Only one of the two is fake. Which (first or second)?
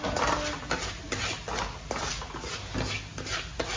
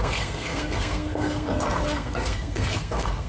second